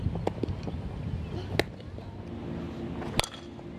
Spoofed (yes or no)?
no